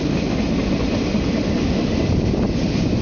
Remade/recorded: recorded